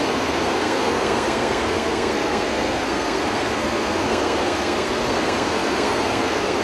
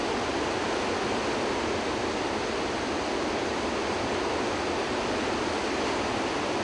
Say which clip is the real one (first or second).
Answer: second